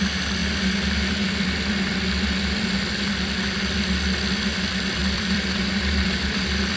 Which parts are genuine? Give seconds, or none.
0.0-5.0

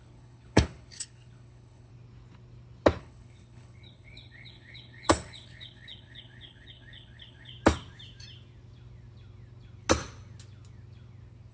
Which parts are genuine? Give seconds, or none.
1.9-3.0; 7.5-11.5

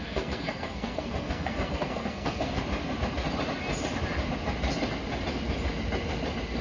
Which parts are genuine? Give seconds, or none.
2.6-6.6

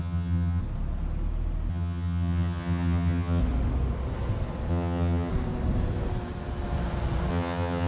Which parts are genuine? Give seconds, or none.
0.6-1.7; 3.4-4.7; 5.3-7.3